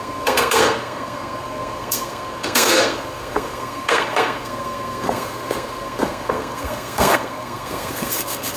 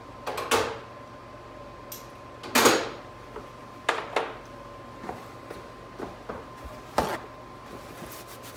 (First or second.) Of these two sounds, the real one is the second